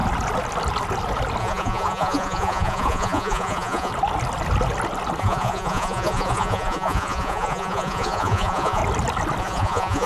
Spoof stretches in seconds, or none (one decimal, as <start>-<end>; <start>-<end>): 1.4-3.9; 5.2-8.8; 9.4-10.1